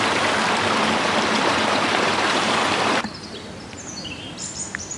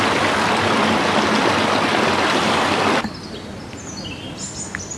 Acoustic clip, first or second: second